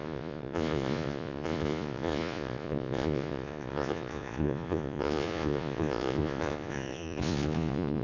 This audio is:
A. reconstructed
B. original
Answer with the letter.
A